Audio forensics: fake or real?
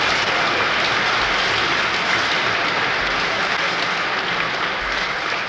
real